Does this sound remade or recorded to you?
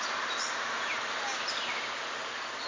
recorded